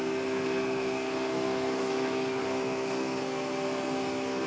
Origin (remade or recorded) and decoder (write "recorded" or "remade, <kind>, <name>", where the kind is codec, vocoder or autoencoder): remade, codec, SNAC